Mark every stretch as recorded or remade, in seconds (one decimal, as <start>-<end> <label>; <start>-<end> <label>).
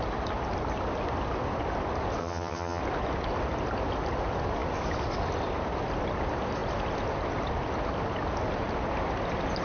0.0-2.2 recorded; 2.2-2.8 remade; 2.8-9.6 recorded